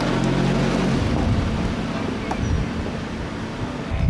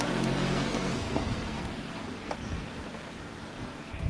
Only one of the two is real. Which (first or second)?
first